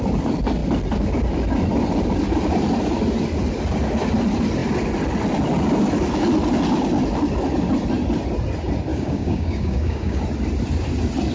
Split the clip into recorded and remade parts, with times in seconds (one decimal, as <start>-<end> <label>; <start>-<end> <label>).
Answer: 0.0-8.9 recorded; 8.9-10.2 remade; 10.2-11.3 recorded